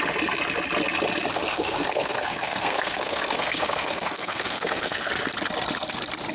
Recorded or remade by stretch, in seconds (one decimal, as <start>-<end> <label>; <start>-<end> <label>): 0.0-1.3 recorded; 1.3-5.1 remade; 5.1-6.3 recorded